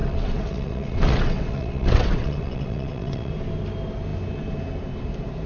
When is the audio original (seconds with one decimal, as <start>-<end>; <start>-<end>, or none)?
3.3-5.5